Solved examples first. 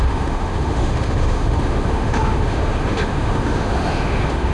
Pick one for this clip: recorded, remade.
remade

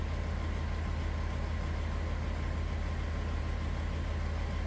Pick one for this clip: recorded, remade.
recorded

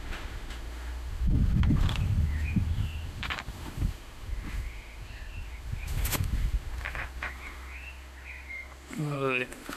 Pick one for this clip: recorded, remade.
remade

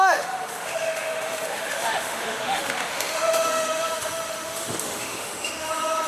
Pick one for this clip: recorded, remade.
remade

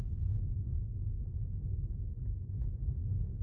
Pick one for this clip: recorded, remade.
recorded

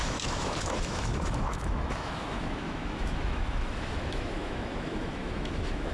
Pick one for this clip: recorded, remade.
remade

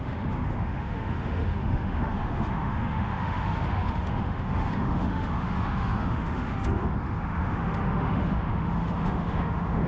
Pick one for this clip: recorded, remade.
remade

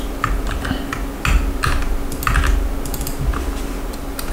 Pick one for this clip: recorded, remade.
recorded